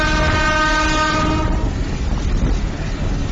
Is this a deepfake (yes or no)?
no